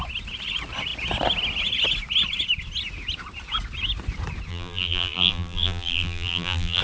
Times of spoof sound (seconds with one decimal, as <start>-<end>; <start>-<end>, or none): 4.5-6.8